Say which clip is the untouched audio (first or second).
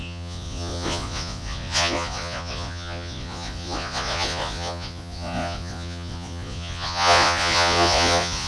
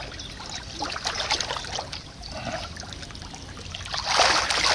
second